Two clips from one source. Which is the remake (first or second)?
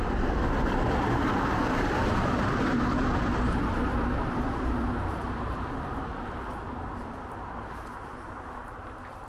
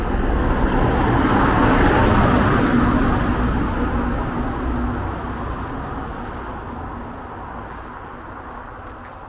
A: first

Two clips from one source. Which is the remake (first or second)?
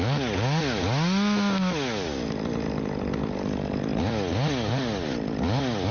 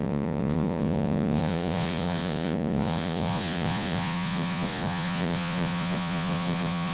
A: second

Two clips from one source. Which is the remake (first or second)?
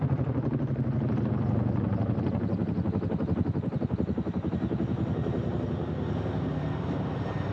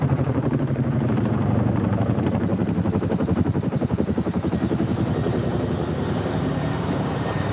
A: second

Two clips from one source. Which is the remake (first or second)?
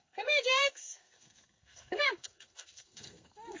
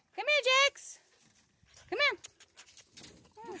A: first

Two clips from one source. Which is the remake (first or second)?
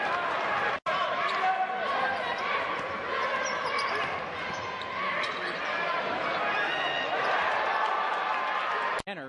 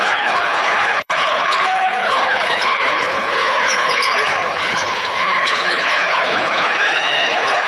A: second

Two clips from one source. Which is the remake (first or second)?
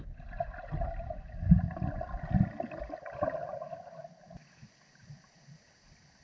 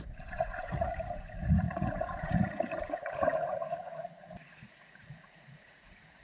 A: second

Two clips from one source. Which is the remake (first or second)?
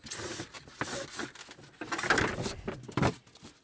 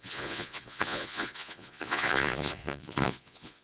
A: second